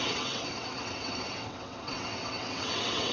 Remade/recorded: remade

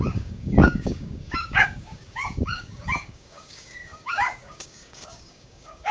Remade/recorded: remade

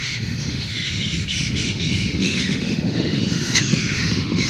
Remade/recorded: remade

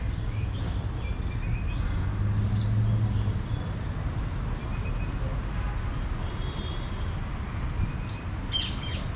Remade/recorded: recorded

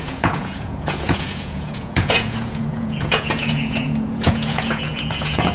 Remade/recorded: remade